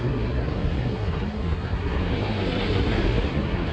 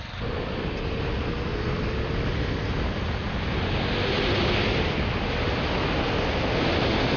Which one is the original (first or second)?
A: second